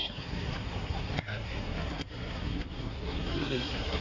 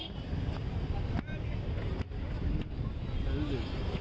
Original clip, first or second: second